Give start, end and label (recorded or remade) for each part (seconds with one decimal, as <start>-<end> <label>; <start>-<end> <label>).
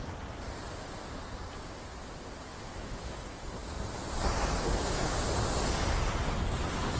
0.0-2.5 recorded; 2.5-3.2 remade; 3.2-7.0 recorded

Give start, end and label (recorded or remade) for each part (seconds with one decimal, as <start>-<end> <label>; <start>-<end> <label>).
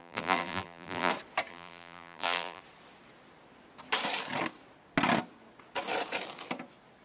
0.0-1.1 remade; 1.1-1.5 recorded; 1.5-2.6 remade; 2.6-7.0 recorded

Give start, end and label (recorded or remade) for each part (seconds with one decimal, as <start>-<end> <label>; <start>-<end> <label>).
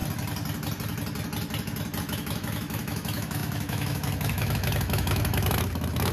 0.0-2.0 recorded; 2.0-6.1 remade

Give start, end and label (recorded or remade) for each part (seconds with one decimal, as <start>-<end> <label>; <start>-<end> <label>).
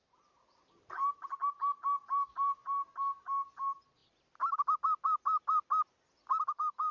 0.0-6.9 recorded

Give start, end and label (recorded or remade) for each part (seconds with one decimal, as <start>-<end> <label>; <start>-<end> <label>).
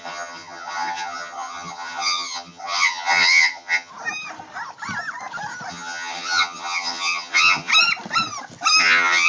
0.0-3.9 remade; 3.9-5.7 recorded; 5.7-7.7 remade; 7.7-8.8 recorded; 8.8-9.3 remade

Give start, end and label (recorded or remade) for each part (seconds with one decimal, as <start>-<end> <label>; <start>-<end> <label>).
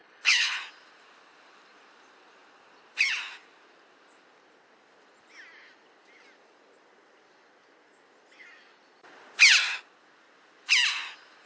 0.0-0.6 remade; 0.6-11.5 recorded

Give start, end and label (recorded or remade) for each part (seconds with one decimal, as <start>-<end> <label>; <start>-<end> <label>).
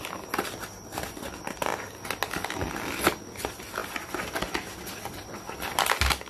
0.0-6.3 recorded